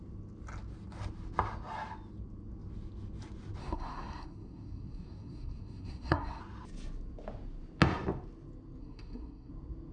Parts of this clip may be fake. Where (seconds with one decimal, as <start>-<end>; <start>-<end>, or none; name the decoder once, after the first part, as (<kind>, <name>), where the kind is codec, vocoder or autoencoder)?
3.6-6.4 (codec, SNAC); 8.8-9.5